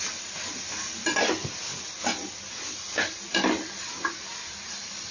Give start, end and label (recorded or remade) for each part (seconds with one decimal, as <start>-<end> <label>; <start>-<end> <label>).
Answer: 0.0-5.1 recorded